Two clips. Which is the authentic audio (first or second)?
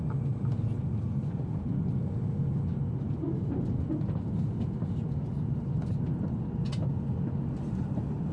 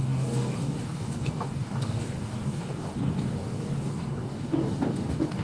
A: first